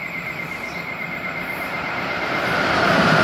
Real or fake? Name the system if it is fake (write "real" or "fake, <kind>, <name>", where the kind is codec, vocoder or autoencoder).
fake, vocoder, BigVGAN v2